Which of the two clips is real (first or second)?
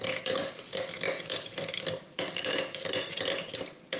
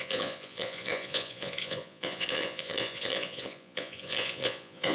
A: first